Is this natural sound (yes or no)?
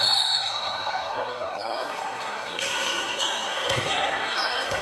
no